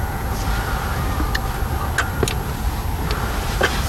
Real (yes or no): yes